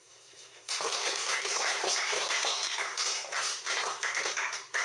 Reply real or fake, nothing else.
fake